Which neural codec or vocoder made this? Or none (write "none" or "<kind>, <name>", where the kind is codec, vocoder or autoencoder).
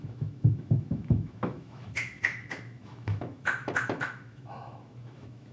autoencoder, DAC-VAE